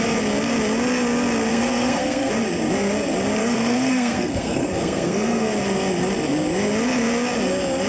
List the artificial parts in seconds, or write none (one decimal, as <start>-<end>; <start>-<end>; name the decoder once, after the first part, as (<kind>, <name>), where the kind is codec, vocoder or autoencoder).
1.5-2.3 (codec, SNAC); 3.4-5.5